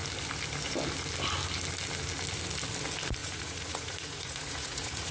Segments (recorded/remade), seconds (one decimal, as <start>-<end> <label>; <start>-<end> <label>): 0.0-3.2 recorded; 3.2-5.1 remade

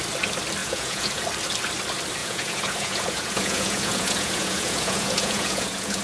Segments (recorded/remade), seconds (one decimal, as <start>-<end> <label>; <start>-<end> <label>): 0.0-0.6 recorded; 0.6-1.2 remade; 1.2-2.2 recorded; 2.2-6.0 remade

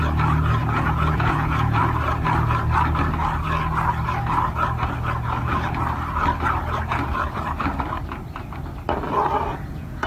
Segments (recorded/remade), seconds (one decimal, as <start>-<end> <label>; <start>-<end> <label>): 0.0-0.6 recorded; 0.6-1.8 remade; 1.8-9.5 recorded; 9.5-10.1 remade